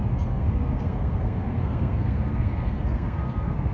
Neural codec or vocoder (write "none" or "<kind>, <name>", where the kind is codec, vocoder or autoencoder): codec, SNAC